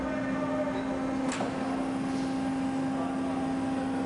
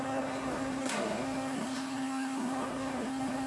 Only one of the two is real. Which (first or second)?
first